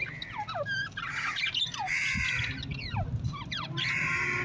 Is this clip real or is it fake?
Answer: real